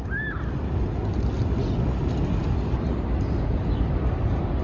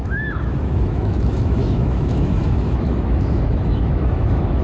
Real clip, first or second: first